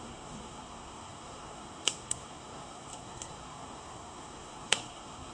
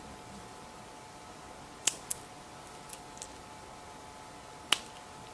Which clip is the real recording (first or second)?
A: second